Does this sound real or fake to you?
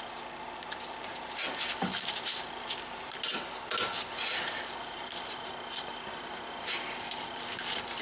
real